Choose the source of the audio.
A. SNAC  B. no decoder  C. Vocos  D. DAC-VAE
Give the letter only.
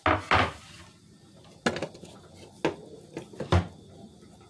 B